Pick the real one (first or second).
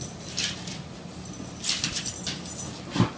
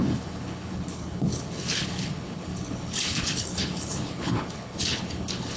first